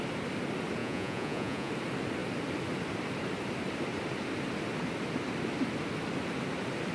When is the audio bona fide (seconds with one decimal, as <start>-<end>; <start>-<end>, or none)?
0.0-0.8; 1.7-6.9